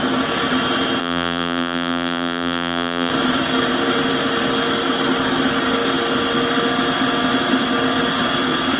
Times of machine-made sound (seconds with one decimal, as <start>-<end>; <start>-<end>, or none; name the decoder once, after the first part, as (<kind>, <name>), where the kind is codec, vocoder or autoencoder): 1.0-3.1 (vocoder, BigVGAN v2)